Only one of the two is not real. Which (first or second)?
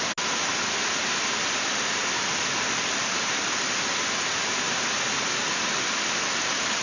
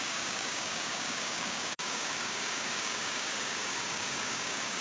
second